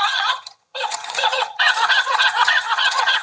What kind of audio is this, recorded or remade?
remade